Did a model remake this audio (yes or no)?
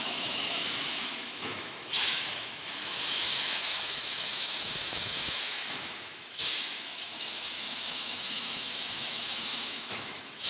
yes